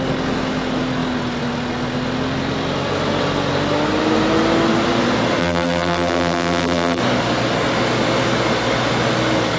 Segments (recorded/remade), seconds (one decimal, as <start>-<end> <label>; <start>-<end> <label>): 0.0-5.4 recorded; 5.4-7.0 remade; 7.0-9.6 recorded